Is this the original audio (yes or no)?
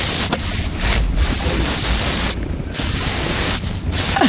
yes